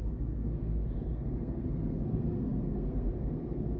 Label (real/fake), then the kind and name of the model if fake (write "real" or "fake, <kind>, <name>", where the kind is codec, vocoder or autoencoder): fake, codec, SNAC